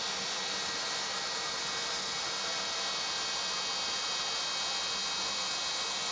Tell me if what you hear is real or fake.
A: real